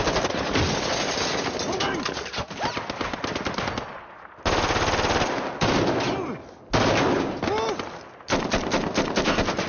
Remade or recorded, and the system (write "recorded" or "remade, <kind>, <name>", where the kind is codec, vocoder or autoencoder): recorded